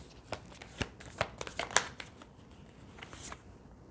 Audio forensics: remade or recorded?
recorded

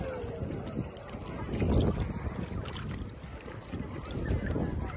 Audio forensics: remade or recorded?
recorded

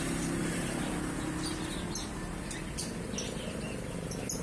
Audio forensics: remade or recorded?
recorded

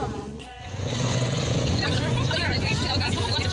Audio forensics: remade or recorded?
remade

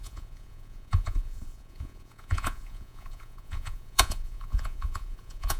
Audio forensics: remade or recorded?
remade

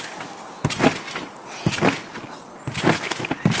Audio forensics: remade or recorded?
recorded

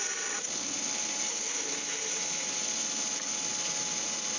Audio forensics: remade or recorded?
recorded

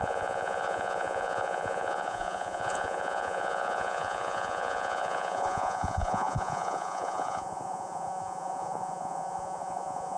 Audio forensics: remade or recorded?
remade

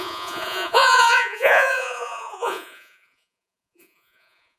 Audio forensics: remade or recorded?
remade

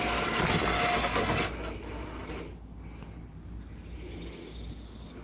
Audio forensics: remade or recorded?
recorded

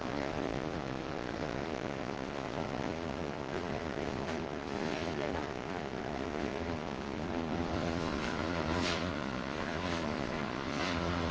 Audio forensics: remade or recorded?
remade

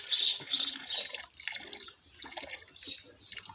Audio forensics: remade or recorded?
recorded